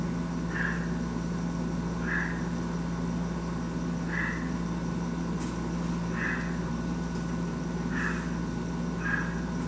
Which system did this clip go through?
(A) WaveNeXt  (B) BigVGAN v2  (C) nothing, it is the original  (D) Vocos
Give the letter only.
C